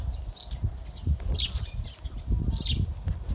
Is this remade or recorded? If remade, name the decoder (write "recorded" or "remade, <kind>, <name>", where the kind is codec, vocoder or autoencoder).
recorded